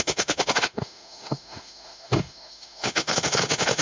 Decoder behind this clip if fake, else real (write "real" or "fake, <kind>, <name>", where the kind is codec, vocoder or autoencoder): fake, autoencoder, DAC-VAE